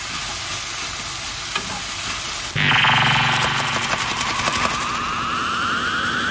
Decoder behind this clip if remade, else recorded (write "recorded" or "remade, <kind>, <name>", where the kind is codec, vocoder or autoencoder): recorded